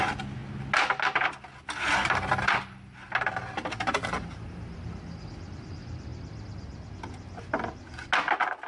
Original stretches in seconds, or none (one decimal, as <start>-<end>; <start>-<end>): 0.0-8.7